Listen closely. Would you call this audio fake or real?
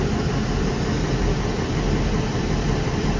real